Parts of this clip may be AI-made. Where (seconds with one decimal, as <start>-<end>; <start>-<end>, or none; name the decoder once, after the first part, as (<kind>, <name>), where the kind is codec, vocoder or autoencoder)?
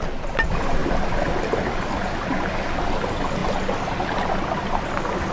none